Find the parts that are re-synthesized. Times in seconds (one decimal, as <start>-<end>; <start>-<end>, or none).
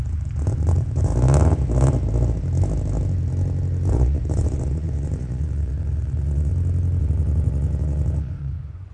0.0-1.1; 3.9-6.5; 7.0-8.9